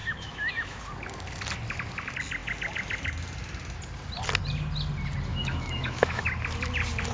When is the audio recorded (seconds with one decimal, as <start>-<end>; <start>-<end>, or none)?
0.8-5.3; 6.2-7.1